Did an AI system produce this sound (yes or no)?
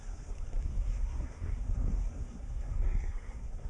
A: yes